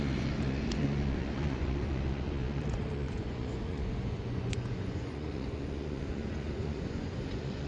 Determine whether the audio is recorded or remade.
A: remade